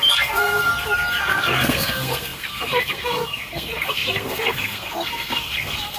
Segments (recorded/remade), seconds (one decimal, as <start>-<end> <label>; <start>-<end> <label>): 0.0-0.7 remade; 0.7-1.2 recorded; 1.2-6.0 remade